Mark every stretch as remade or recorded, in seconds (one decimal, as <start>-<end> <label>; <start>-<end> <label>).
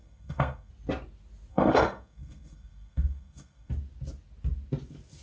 0.0-0.7 remade; 0.7-1.5 recorded; 1.5-3.7 remade; 3.7-5.2 recorded